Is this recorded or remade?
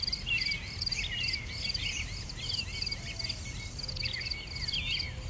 recorded